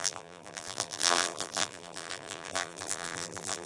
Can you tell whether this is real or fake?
fake